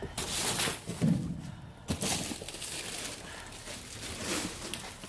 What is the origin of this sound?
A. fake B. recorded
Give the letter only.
B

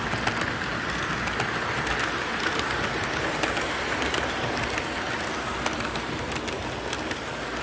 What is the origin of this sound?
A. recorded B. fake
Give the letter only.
A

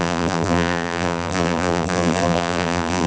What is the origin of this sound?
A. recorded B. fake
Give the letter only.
B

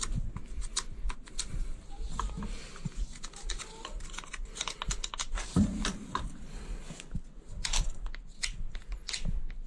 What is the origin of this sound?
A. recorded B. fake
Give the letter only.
A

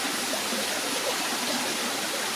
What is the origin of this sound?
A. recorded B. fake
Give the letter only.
A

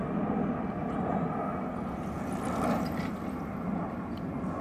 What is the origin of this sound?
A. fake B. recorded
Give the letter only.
B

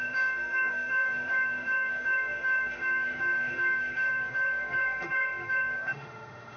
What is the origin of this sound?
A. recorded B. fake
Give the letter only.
B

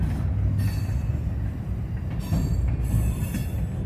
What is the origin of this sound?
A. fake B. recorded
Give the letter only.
B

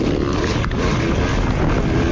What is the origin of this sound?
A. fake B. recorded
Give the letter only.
B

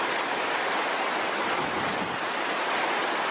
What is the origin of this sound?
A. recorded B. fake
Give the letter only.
A